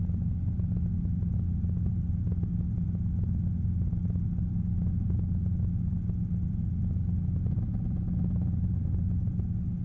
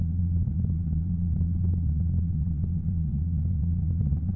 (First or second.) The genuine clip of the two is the first